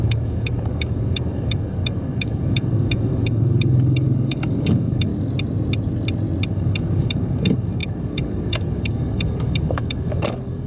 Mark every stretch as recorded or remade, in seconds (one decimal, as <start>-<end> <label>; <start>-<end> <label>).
0.0-5.1 remade; 5.1-6.5 recorded; 6.5-10.7 remade